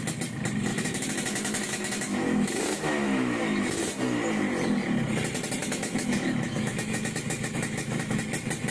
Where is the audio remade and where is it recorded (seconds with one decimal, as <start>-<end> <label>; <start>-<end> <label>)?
0.0-0.7 recorded; 0.7-3.9 remade; 3.9-5.6 recorded; 5.6-8.2 remade; 8.2-8.7 recorded